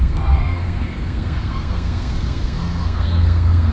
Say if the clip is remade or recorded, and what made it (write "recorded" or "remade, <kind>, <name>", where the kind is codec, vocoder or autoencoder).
remade, codec, SNAC